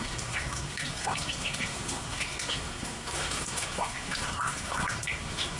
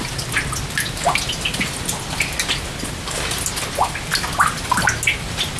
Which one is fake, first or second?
first